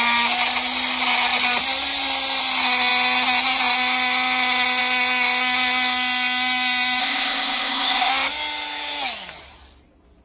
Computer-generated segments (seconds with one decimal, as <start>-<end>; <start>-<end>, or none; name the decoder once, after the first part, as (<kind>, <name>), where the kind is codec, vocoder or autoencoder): 7.0-8.1 (codec, ZipCodec)